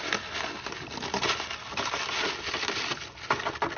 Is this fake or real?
real